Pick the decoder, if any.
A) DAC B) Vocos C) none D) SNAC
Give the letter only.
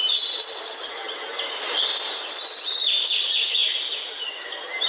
C